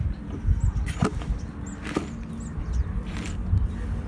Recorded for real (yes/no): yes